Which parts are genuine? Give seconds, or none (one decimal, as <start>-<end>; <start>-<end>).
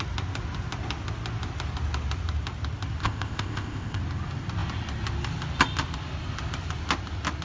0.0-3.0; 4.0-7.4